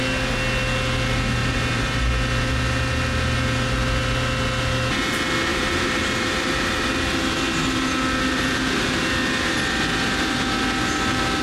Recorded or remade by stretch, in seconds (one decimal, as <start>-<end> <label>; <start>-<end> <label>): 0.0-1.4 recorded; 1.4-2.1 remade; 2.1-5.5 recorded; 5.5-6.9 remade; 6.9-11.4 recorded